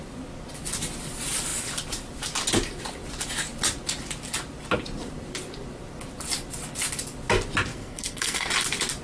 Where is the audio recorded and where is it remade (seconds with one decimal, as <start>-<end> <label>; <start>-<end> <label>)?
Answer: 0.0-7.7 recorded; 7.7-8.5 remade; 8.5-9.0 recorded

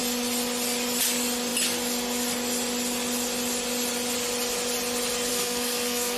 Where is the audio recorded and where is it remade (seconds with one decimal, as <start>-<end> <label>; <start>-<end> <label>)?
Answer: 0.0-5.3 recorded; 5.3-6.2 remade